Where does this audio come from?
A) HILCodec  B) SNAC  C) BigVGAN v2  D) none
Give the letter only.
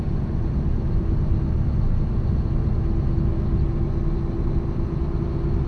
D